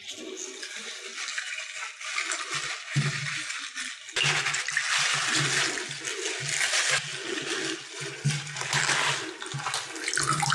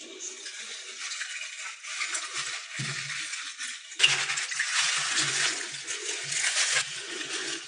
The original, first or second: first